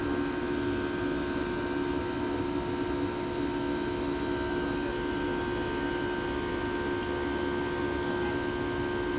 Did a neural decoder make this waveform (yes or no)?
no